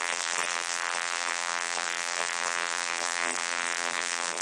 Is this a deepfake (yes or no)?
yes